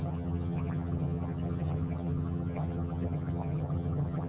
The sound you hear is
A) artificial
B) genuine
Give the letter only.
A